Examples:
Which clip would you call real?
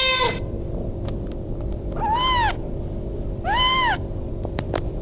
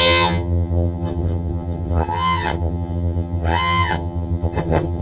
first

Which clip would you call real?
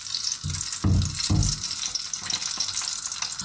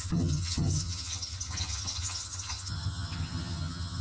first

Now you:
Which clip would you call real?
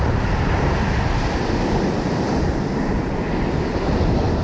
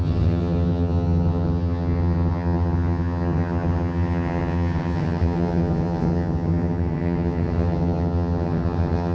first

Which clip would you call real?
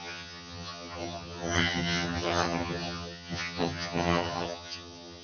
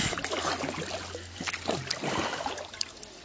second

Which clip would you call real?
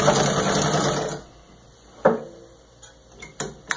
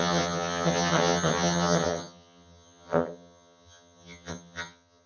first